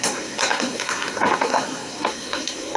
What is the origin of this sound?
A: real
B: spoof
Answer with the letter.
B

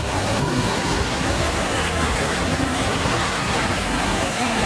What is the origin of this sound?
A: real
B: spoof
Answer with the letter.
B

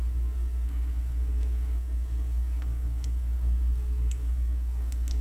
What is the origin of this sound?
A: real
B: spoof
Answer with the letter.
B